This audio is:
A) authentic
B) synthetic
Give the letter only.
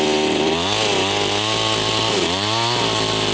A